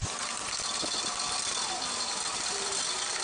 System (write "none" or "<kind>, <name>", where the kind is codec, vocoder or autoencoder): vocoder, BigVGAN v2